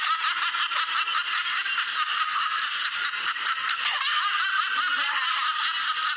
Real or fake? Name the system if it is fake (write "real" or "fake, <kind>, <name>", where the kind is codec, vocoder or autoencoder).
real